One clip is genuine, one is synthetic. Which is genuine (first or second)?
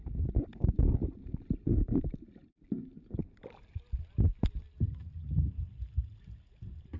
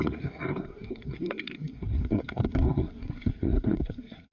first